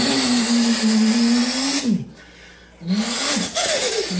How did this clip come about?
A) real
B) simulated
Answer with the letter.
A